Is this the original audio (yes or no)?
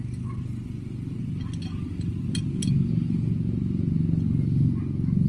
yes